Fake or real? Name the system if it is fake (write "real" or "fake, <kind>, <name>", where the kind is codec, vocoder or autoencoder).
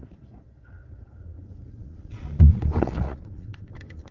fake, vocoder, Vocos